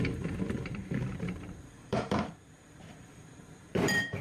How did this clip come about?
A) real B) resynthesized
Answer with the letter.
B